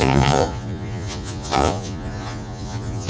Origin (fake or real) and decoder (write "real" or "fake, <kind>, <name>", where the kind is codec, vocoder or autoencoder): fake, vocoder, Vocos